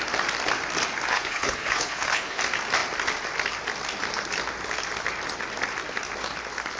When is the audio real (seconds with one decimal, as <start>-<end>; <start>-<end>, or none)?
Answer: 0.0-1.1; 2.4-6.8

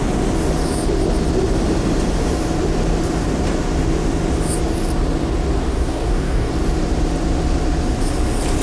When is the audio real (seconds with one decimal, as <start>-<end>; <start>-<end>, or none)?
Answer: 0.0-5.7; 6.5-8.6

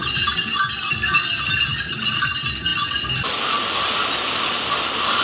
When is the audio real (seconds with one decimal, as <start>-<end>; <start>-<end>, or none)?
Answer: 0.0-5.2

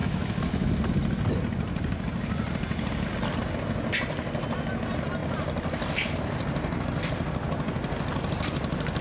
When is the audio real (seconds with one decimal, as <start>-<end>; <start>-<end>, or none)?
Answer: 0.7-9.0

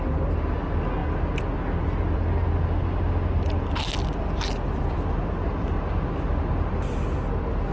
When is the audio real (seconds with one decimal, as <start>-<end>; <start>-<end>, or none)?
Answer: 0.0-7.7